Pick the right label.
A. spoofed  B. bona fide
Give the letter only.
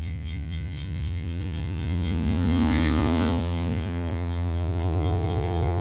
A